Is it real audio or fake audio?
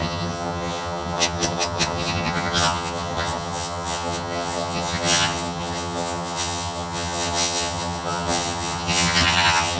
fake